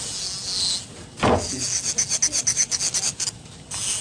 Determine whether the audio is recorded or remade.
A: recorded